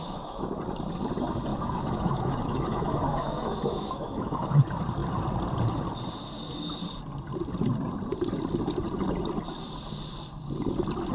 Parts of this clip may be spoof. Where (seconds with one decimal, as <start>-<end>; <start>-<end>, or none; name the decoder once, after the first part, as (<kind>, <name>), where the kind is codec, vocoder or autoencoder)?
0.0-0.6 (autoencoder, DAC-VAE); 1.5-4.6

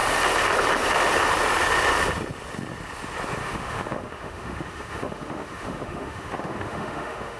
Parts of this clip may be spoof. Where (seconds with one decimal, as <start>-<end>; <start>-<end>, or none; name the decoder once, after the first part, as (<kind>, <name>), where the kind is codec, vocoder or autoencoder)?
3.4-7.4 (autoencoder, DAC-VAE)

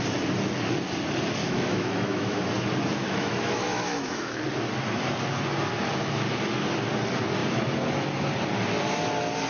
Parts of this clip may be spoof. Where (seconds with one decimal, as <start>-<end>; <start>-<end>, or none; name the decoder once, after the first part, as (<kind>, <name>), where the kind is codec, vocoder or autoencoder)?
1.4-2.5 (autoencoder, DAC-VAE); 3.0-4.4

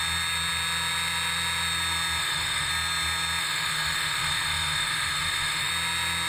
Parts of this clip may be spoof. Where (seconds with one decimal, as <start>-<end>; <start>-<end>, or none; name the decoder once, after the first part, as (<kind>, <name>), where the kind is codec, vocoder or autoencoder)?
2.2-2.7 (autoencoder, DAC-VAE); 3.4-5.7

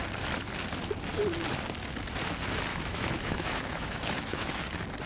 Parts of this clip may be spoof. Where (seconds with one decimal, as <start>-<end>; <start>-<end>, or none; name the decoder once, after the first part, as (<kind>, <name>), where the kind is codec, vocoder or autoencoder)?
2.7-4.5 (autoencoder, DAC-VAE)

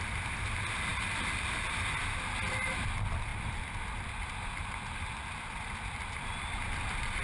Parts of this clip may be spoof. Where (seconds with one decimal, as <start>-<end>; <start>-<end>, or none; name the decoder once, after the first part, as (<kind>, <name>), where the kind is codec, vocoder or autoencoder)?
none